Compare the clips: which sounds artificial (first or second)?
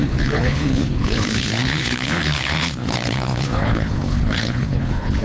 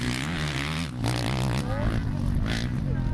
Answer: first